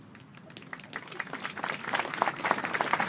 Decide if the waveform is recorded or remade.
recorded